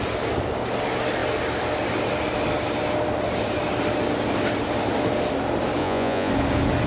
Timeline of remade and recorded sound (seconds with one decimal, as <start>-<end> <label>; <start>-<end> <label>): 0.0-5.8 recorded; 5.8-6.3 remade; 6.3-6.9 recorded